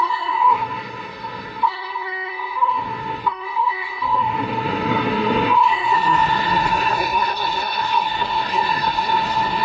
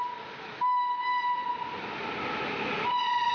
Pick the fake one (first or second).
first